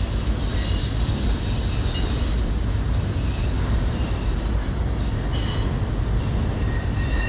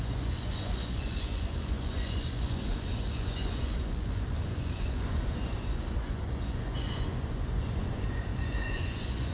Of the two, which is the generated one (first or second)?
second